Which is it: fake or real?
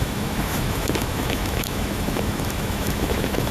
fake